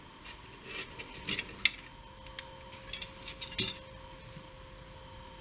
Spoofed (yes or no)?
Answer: no